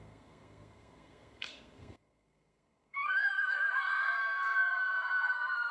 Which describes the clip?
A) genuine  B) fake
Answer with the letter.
B